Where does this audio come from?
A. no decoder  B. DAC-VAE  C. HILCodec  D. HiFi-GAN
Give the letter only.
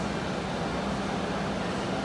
A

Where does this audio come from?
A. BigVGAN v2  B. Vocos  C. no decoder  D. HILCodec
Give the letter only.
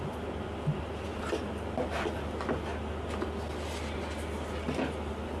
C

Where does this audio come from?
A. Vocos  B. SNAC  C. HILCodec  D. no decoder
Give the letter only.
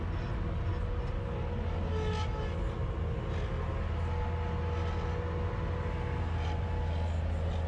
D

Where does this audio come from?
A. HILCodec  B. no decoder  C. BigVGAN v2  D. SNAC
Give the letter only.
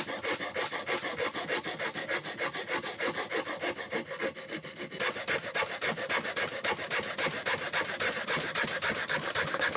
B